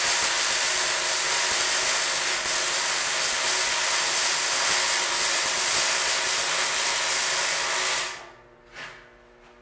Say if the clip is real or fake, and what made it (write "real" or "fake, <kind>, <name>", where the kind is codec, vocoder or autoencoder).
real